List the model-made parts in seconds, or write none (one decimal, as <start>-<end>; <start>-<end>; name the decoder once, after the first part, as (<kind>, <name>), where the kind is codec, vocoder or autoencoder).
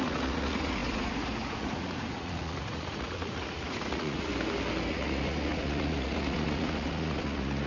0.0-4.3 (vocoder, Vocos); 4.9-7.7